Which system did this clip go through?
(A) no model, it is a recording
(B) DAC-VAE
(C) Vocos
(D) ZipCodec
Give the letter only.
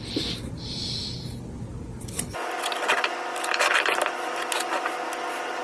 A